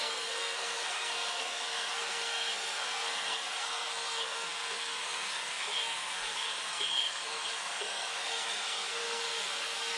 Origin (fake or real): fake